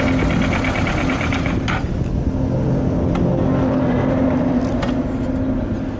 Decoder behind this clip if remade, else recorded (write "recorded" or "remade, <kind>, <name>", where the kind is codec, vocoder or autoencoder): recorded